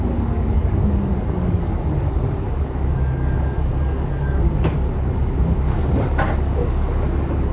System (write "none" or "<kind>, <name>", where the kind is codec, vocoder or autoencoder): codec, DAC